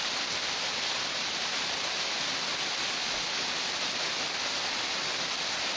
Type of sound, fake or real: real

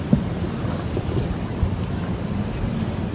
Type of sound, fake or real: real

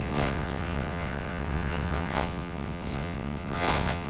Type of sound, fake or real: fake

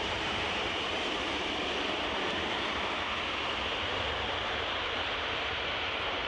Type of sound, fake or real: fake